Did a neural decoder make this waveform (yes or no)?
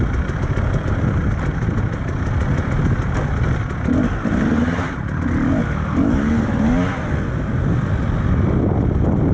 no